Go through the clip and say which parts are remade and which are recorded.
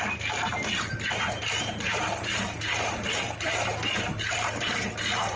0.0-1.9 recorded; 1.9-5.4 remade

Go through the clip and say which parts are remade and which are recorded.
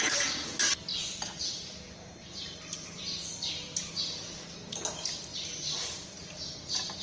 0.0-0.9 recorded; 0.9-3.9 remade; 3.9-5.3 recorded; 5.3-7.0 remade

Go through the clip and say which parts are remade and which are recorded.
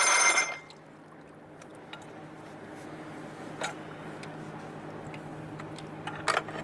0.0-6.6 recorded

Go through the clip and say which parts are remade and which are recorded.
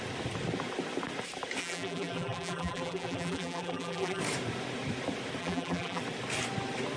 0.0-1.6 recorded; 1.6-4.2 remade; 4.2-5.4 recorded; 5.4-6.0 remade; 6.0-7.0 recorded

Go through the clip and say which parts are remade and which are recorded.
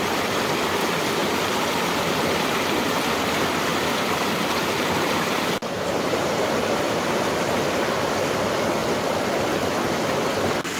0.0-1.2 recorded; 1.2-2.4 remade; 2.4-3.7 recorded; 3.7-7.6 remade; 7.6-10.8 recorded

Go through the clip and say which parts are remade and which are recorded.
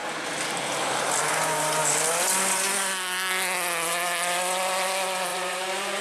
0.0-5.3 recorded; 5.3-6.0 remade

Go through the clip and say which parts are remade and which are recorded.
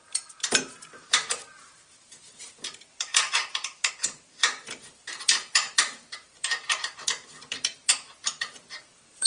0.0-9.3 remade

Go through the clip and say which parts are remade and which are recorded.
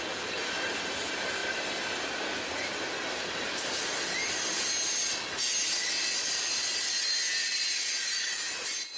0.0-1.4 recorded; 1.4-2.9 remade; 2.9-9.0 recorded